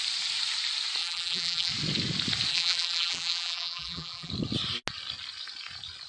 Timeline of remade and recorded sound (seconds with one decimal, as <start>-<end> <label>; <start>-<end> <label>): 0.0-1.0 recorded; 1.0-1.7 remade; 1.7-2.5 recorded; 2.5-4.3 remade; 4.3-6.1 recorded